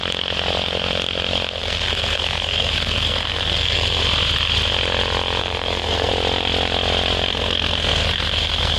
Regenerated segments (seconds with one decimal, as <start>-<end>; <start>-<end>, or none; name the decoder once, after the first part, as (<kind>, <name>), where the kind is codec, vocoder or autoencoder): 1.6-4.0 (codec, SNAC); 5.4-6.1; 7.3-8.8